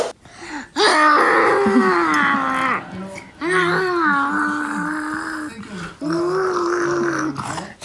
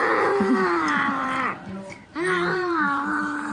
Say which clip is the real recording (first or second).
first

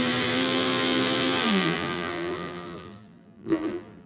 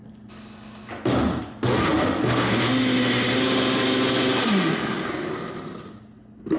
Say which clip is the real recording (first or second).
second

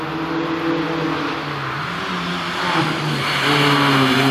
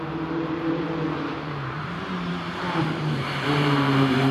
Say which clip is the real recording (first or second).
first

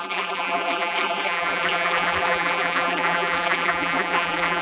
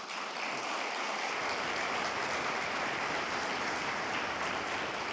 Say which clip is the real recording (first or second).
second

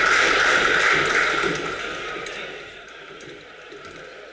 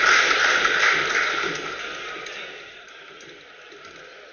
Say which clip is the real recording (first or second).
second